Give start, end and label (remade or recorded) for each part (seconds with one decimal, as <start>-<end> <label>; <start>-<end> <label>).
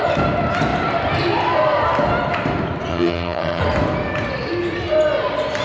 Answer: 0.0-2.9 recorded; 2.9-3.6 remade; 3.6-5.6 recorded